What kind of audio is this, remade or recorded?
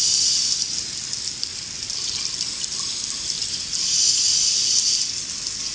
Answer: recorded